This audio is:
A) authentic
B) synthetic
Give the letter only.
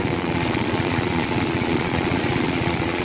B